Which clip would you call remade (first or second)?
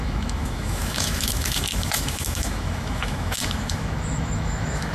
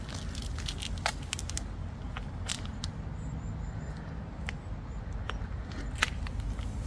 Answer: first